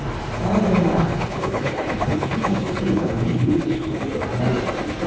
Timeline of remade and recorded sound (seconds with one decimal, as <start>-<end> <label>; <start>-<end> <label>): 0.0-0.9 recorded; 0.9-4.0 remade; 4.0-5.1 recorded